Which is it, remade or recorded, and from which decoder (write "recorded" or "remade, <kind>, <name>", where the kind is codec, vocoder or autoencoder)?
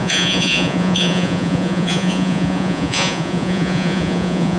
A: remade, vocoder, Vocos